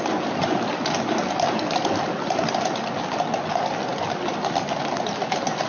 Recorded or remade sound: recorded